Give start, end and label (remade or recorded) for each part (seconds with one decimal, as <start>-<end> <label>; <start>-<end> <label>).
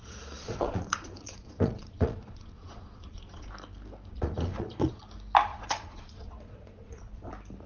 0.0-3.5 remade; 3.5-4.1 recorded; 4.1-5.0 remade; 5.0-5.5 recorded; 5.5-7.3 remade; 7.3-7.7 recorded